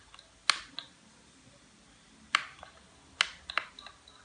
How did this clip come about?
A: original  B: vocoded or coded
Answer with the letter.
A